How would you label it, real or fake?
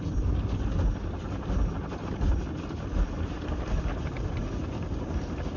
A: real